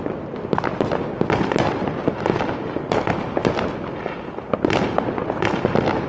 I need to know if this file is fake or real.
real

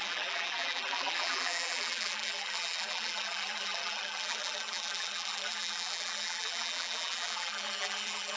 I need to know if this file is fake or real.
fake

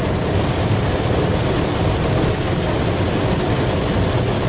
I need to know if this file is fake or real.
real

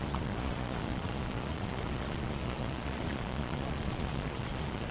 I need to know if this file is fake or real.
fake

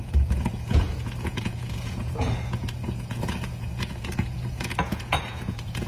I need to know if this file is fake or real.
fake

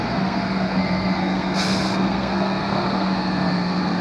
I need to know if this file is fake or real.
fake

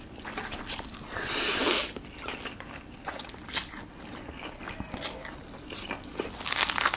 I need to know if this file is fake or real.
real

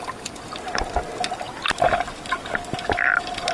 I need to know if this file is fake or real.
real